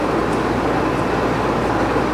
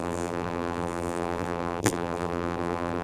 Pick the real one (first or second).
first